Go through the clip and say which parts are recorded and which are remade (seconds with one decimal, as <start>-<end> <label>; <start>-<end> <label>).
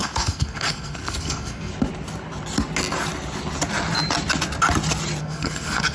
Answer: 0.0-1.7 remade; 1.7-5.2 recorded; 5.2-5.9 remade